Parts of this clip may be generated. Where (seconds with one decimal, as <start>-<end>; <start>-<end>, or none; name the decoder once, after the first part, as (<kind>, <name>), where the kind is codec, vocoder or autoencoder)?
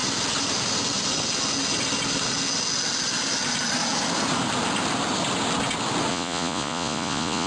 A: 6.1-7.5 (vocoder, Vocos)